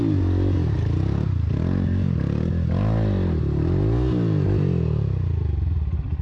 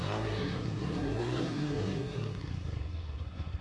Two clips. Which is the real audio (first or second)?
first